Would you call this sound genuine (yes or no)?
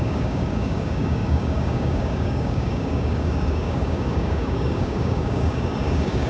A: no